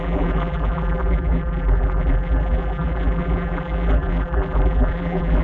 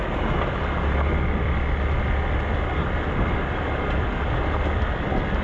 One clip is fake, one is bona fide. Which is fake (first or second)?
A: first